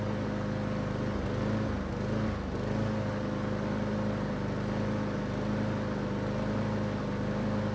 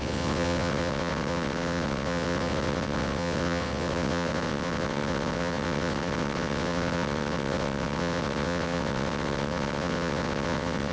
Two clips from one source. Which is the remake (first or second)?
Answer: second